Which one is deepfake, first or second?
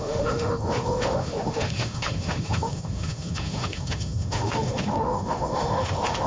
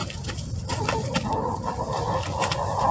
first